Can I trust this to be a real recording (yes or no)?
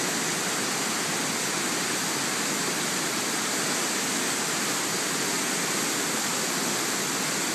yes